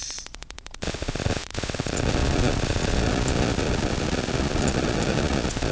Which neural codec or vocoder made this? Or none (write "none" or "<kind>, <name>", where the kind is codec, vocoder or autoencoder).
vocoder, Vocos